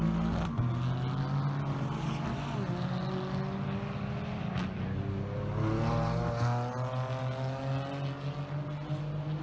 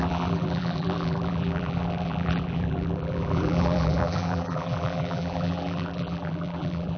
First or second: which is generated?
second